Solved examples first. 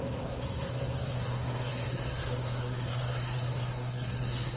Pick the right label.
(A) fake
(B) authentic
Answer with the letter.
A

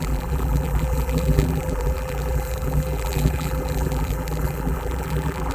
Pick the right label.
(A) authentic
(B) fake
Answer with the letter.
B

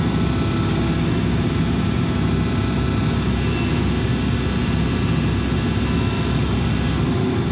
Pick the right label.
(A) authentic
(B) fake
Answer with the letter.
A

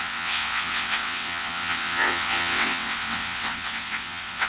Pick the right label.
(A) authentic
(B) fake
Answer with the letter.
B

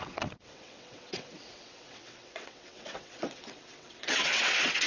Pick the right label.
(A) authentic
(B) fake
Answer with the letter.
B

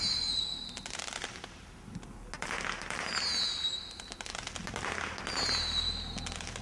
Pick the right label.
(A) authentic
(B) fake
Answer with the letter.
A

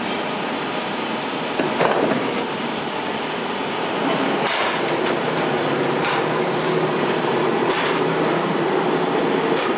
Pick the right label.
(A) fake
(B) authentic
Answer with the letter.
A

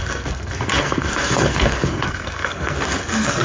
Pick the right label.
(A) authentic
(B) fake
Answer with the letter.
B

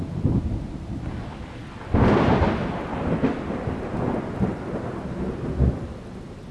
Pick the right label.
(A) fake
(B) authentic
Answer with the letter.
B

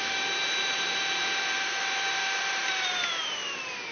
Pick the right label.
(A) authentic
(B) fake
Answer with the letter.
B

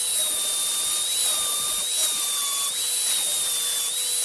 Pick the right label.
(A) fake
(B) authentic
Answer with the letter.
B